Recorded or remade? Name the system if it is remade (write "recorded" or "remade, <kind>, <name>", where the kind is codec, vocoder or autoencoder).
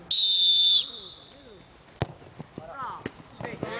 recorded